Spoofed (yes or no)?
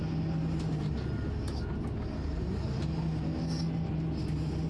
no